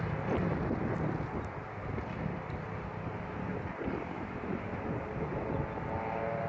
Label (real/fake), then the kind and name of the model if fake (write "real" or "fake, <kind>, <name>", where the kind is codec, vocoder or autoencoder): real